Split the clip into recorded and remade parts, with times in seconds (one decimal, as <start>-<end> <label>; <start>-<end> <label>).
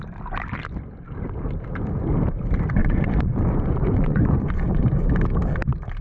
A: 0.0-2.8 recorded; 2.8-4.8 remade; 4.8-6.0 recorded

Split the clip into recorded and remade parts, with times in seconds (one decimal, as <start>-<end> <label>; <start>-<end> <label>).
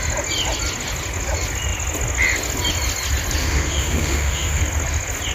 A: 0.0-3.4 recorded; 3.4-4.6 remade; 4.6-5.3 recorded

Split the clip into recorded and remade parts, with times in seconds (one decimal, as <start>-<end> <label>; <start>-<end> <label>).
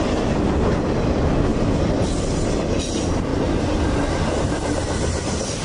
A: 0.0-5.6 recorded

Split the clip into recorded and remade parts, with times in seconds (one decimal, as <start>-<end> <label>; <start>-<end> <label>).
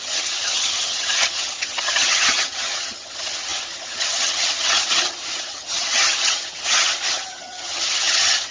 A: 0.0-8.5 remade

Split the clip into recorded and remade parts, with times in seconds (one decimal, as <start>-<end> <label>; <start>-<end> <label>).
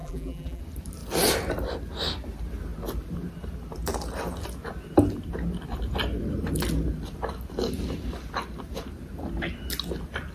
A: 0.0-0.6 remade; 0.6-10.3 recorded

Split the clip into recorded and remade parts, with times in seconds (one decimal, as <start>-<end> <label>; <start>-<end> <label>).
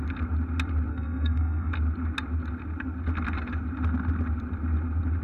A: 0.0-0.9 recorded; 0.9-1.7 remade; 1.7-5.2 recorded